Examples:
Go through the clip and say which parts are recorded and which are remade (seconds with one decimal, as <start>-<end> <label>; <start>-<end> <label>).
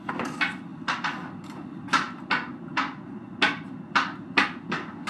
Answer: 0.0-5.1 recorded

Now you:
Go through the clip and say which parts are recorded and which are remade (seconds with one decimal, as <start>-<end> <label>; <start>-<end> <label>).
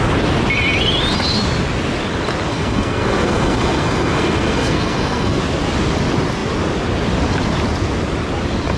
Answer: 0.0-2.5 recorded; 2.5-5.4 remade; 5.4-8.8 recorded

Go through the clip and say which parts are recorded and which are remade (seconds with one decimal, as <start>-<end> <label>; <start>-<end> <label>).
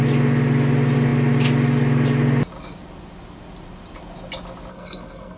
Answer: 0.0-4.7 recorded; 4.7-5.4 remade